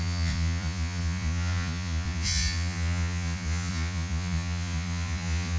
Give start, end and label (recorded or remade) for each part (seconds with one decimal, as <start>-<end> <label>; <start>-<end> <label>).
0.0-5.6 remade